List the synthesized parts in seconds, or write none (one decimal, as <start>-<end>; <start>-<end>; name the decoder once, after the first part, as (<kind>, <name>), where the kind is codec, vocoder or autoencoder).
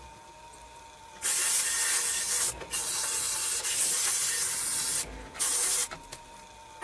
none